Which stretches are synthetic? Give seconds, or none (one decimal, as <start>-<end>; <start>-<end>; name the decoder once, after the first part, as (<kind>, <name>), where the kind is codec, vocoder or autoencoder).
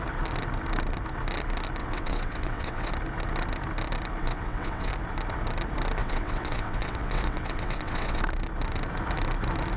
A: 1.8-2.9 (vocoder, WaveNeXt); 4.2-4.9; 6.0-8.2